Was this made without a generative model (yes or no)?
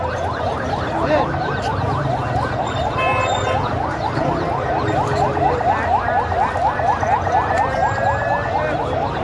yes